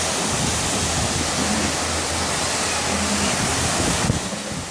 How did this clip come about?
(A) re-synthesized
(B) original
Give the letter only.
B